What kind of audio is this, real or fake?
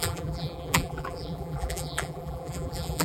fake